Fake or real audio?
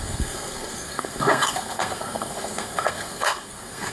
fake